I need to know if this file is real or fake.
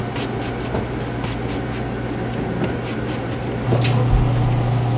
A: real